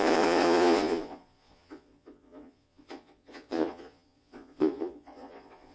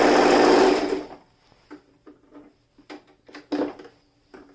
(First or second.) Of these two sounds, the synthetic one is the first